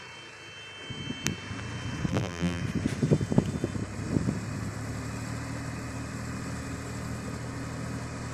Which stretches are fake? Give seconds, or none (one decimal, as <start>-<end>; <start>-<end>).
2.1-2.6